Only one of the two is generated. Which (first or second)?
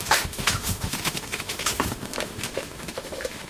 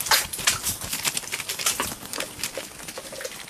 first